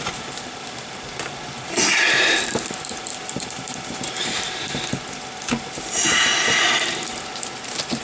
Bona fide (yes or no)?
no